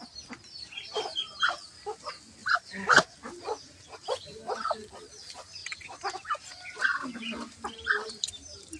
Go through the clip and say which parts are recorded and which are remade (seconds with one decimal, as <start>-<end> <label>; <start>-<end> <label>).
0.0-1.1 recorded; 1.1-1.7 remade; 1.7-2.4 recorded; 2.4-4.2 remade; 4.2-5.6 recorded; 5.6-6.4 remade; 6.4-8.8 recorded